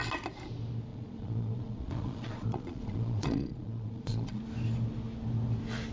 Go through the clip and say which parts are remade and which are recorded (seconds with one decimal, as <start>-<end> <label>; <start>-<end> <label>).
0.0-0.9 recorded; 0.9-4.4 remade; 4.4-5.9 recorded